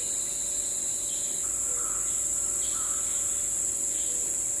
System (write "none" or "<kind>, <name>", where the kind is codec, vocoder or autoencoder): none